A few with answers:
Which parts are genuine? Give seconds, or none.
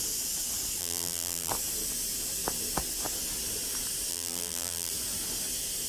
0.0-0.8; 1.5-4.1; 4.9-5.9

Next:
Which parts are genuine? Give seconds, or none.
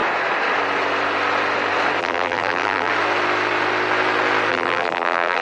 0.0-2.0; 2.9-4.5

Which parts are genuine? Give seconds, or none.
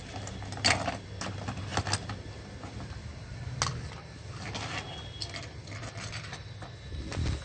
0.0-7.4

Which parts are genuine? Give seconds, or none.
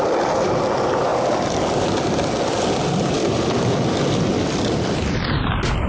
0.0-5.9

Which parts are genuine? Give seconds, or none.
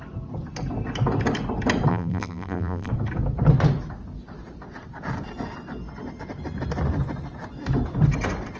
0.0-1.9; 2.9-8.6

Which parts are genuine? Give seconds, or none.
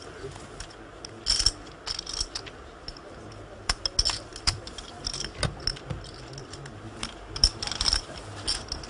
0.0-4.3; 5.6-8.9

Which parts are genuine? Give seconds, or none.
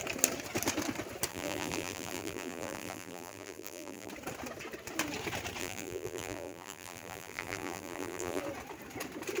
0.0-1.3; 4.1-5.6; 8.4-9.4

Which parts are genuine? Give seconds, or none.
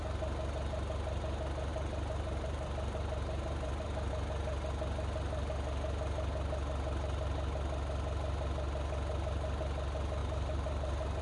0.0-1.7; 4.1-10.2